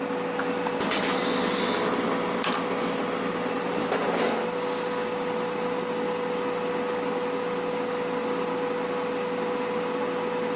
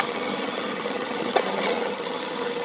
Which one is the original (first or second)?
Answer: first